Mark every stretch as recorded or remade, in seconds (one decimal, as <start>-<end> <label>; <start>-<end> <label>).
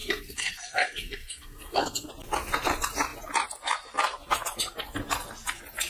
0.0-2.1 remade; 2.1-5.9 recorded